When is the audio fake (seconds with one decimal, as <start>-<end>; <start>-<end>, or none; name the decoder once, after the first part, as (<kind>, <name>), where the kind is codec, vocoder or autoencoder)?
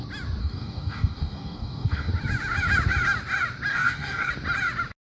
0.4-2.1 (codec, DAC); 3.7-4.3